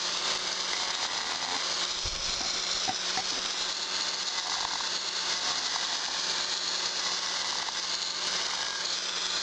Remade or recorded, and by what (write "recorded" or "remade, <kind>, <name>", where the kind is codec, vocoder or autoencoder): recorded